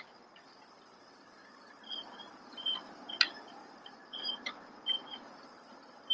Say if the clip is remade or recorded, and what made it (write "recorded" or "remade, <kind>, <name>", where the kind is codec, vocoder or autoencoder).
recorded